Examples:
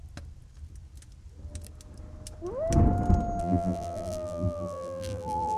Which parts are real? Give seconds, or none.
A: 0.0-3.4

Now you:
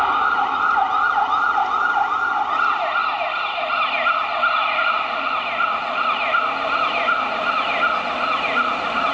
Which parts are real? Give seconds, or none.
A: 0.0-9.1

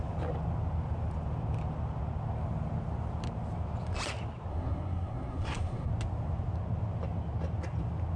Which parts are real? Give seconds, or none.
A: 0.0-4.5; 5.9-8.2

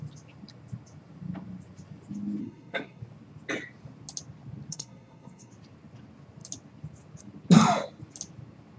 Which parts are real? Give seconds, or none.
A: 0.0-2.4; 3.0-4.7; 5.5-8.8

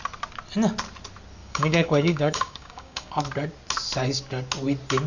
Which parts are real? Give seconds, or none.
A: 0.0-1.4; 3.2-5.1

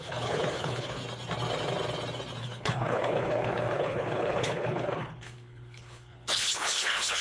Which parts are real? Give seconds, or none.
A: 1.0-2.4

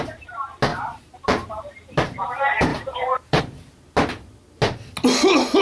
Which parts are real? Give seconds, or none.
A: 0.0-0.7; 2.3-2.7; 3.4-5.6